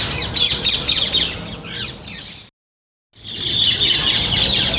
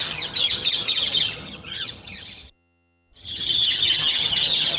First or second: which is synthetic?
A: second